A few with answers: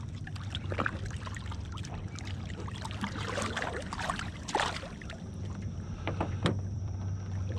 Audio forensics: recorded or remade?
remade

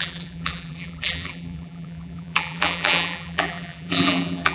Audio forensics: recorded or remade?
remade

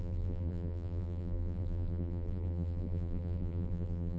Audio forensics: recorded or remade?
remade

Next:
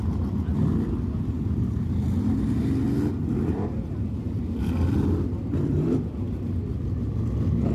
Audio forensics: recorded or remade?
recorded